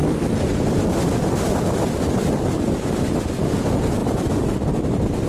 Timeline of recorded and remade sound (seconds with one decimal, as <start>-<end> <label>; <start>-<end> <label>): 0.0-2.6 remade; 2.6-4.0 recorded; 4.0-5.3 remade